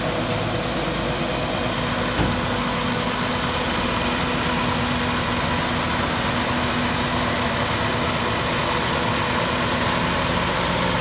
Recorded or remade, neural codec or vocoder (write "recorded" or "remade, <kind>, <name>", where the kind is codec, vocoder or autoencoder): recorded